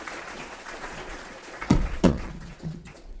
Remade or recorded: remade